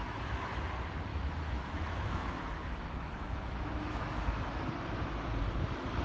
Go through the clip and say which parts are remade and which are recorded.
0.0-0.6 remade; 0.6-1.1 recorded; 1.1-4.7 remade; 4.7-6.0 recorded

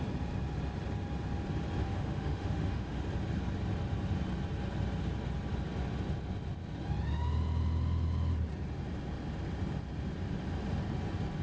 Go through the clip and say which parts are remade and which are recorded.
0.0-1.8 recorded; 1.8-3.0 remade; 3.0-11.4 recorded

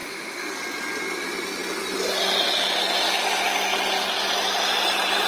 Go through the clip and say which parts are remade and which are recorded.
0.0-0.5 remade; 0.5-5.3 recorded

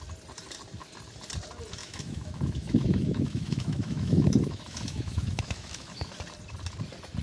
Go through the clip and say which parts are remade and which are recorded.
0.0-1.8 recorded; 1.8-6.1 remade; 6.1-7.2 recorded

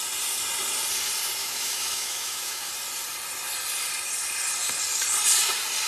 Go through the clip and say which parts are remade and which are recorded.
0.0-1.4 recorded; 1.4-2.7 remade; 2.7-5.9 recorded